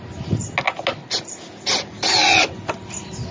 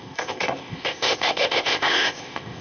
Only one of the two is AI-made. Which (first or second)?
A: second